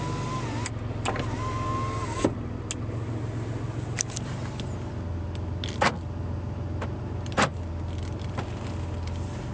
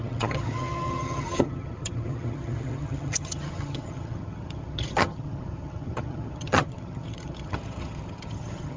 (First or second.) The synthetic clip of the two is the second